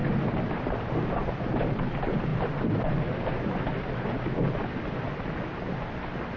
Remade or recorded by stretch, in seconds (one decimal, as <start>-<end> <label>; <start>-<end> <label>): 0.0-1.3 remade; 1.3-2.3 recorded; 2.3-4.2 remade; 4.2-6.4 recorded